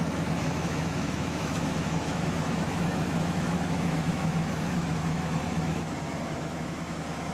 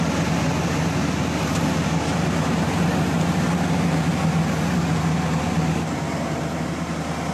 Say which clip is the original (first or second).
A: second